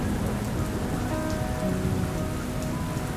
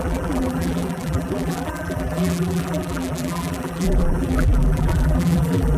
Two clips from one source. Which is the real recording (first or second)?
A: first